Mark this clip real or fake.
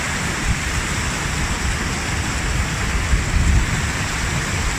real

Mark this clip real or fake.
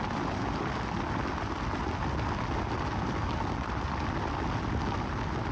real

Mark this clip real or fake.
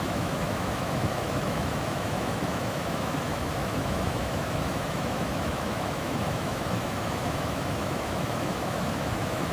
fake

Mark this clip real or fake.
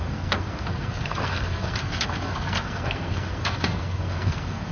fake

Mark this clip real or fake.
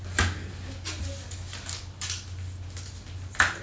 real